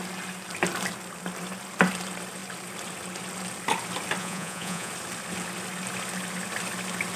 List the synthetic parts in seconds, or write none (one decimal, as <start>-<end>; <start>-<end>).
4.2-4.9